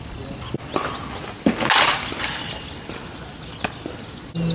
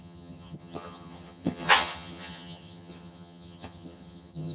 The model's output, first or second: second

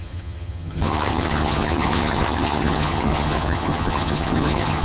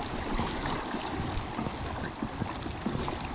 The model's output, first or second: first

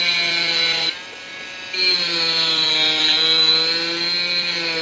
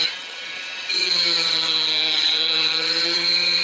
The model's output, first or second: second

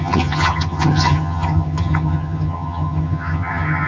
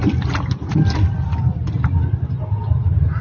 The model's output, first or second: first